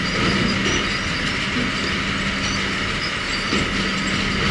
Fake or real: real